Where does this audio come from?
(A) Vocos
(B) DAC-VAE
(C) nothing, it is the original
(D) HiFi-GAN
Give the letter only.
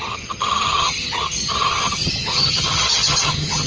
D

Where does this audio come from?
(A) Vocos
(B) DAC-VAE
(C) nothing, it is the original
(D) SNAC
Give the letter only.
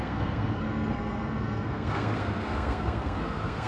D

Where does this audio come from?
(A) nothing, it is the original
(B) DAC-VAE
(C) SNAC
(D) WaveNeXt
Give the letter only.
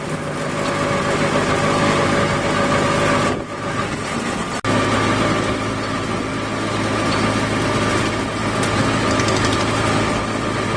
A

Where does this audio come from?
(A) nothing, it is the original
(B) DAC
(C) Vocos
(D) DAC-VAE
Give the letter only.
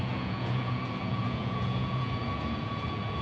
C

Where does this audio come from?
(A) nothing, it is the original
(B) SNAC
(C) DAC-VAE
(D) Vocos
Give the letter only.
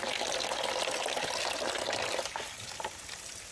A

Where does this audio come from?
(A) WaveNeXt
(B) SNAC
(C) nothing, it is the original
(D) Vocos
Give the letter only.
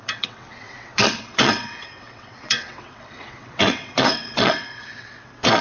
A